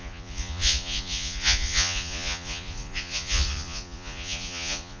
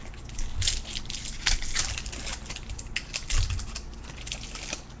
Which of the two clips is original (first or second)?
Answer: second